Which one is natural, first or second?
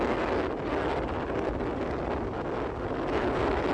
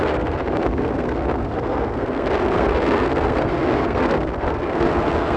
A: first